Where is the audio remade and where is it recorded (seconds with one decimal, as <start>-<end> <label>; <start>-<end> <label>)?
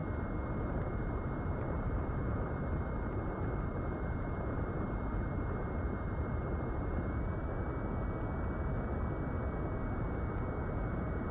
0.0-0.7 recorded; 0.7-7.7 remade; 7.7-10.8 recorded; 10.8-11.3 remade